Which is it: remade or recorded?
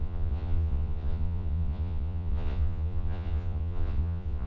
remade